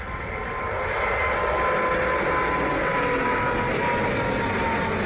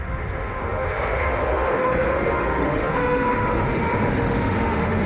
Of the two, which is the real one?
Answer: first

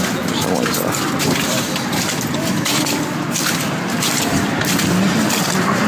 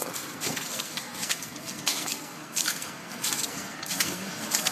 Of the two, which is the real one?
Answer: first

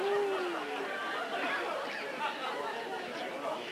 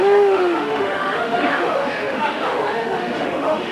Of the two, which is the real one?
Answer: first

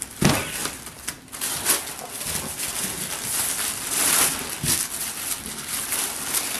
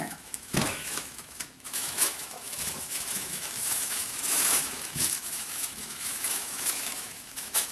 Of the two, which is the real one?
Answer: first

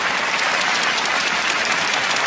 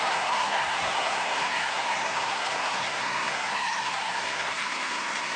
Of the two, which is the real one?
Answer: first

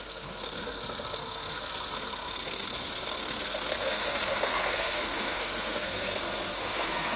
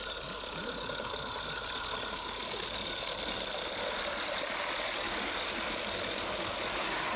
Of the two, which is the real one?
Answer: second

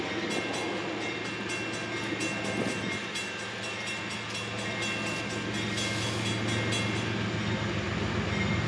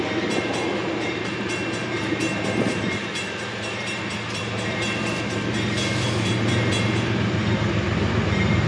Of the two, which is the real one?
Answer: first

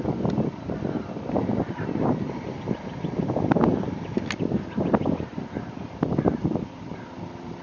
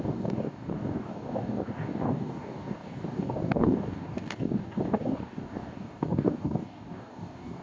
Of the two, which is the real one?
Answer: first